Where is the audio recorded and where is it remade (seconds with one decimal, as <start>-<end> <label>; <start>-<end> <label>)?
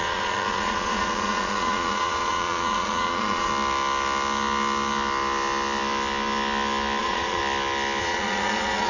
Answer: 0.0-3.5 remade; 3.5-7.0 recorded; 7.0-7.4 remade; 7.4-8.0 recorded; 8.0-8.9 remade